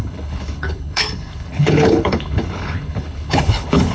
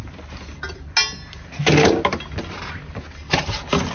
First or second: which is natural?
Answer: second